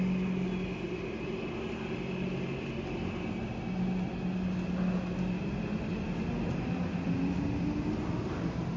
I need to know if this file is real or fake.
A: real